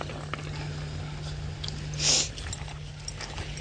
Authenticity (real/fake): real